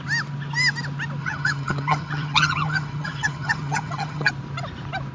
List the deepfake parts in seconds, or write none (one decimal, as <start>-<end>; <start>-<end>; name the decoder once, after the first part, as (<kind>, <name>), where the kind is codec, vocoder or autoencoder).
1.2-4.3 (vocoder, HiFi-GAN)